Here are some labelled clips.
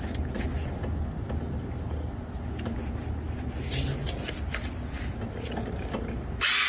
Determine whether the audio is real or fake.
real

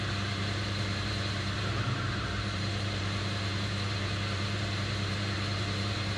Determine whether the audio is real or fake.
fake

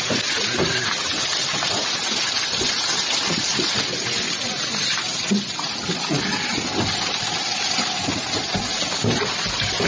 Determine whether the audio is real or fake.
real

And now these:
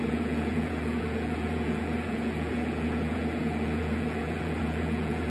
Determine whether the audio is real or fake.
fake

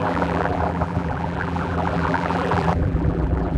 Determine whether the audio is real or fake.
fake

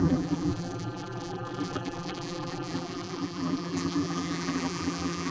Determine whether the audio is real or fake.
fake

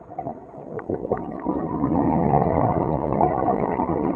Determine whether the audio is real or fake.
fake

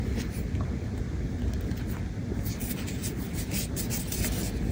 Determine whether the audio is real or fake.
real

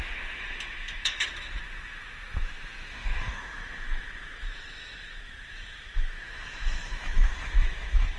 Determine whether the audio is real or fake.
fake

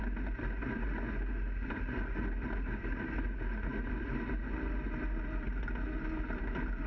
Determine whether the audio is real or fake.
real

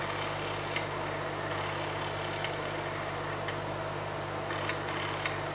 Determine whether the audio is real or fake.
real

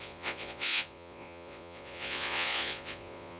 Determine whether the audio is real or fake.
fake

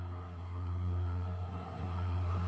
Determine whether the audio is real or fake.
fake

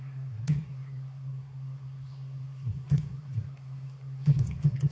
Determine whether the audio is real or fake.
fake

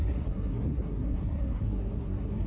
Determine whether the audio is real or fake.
fake